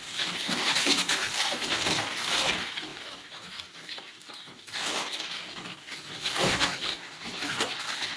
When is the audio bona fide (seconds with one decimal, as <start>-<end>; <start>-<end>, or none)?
none